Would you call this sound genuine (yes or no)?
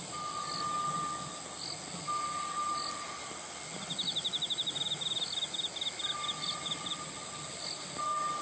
yes